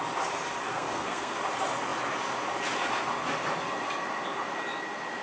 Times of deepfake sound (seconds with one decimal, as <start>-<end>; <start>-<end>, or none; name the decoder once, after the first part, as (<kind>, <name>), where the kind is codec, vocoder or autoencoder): 0.7-1.4 (codec, SNAC)